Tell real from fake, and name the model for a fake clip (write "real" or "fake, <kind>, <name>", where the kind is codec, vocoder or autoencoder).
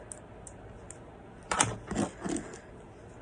real